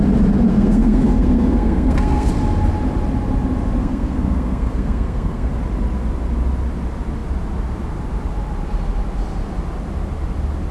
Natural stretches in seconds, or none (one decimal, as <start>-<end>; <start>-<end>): 0.0-0.5; 2.3-3.8; 5.5-10.7